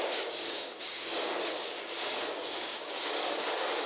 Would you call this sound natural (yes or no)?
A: no